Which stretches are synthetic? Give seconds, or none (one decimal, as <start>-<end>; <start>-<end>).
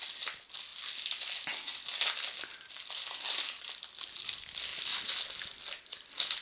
none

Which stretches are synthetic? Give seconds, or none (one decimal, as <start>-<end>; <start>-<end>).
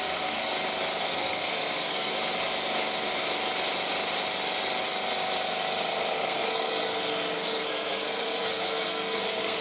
0.0-0.4; 1.0-2.1; 6.1-9.6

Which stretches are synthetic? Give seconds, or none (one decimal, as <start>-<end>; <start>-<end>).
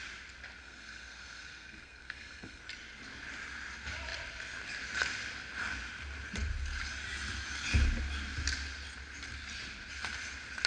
0.6-2.6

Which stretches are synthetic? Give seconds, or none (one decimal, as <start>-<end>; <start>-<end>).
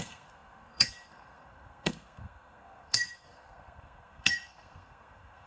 0.0-5.5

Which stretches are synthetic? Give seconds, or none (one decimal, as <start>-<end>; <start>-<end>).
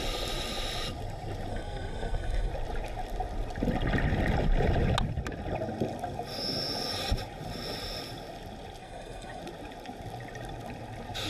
1.5-2.5; 8.8-9.4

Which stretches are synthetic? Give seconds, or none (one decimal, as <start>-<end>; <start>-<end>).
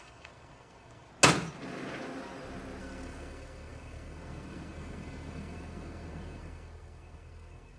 0.0-1.1; 2.8-7.8